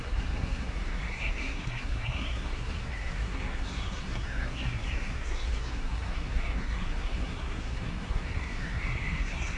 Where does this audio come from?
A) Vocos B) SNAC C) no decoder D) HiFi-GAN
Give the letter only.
B